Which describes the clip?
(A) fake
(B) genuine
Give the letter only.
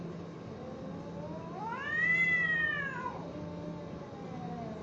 B